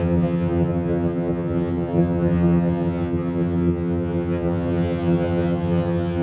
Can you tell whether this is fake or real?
fake